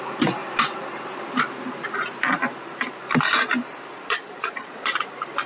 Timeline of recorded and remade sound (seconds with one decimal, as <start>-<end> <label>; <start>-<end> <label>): 0.0-3.9 recorded; 3.9-5.0 remade; 5.0-5.5 recorded